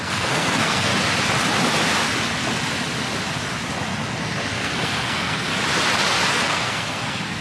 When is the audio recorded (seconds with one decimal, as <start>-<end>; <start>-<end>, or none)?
0.9-4.2; 5.5-6.3